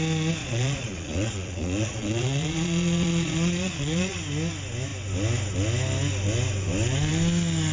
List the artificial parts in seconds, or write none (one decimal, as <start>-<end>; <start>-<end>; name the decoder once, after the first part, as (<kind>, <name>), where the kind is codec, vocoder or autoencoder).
0.4-4.2 (vocoder, Vocos)